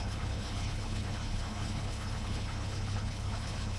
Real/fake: fake